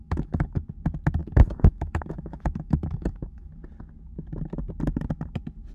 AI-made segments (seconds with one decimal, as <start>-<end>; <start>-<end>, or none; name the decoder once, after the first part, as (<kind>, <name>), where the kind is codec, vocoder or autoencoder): 0.0-0.6 (autoencoder, DAC-VAE); 1.2-3.5